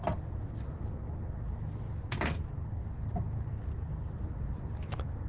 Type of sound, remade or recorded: recorded